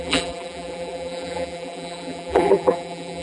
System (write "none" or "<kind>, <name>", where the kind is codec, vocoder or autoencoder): vocoder, BigVGAN v2